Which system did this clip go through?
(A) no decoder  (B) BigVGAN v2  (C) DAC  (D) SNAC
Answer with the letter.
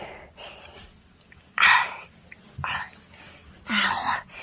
A